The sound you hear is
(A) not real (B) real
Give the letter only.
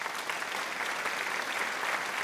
B